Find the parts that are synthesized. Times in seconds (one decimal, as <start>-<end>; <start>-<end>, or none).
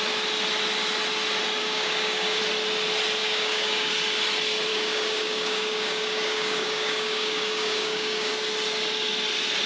1.6-2.4; 3.2-3.9; 4.7-8.3